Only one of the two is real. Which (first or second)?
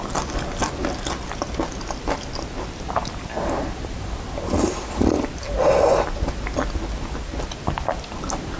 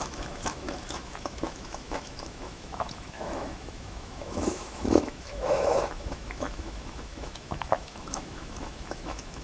first